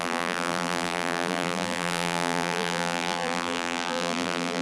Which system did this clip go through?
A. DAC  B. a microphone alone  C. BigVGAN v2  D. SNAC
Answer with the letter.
C